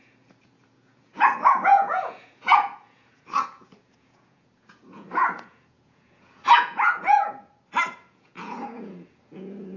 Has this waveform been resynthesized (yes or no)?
yes